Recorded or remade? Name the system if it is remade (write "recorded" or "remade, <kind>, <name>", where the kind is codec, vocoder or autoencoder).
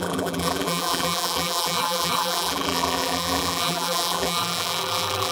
remade, vocoder, BigVGAN v2